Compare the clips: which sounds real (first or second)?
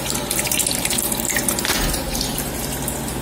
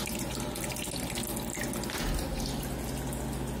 second